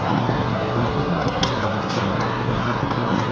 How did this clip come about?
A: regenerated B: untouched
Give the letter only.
A